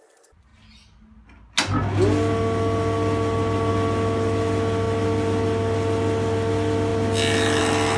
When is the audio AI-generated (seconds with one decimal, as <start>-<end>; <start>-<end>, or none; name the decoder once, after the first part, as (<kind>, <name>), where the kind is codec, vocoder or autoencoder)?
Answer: none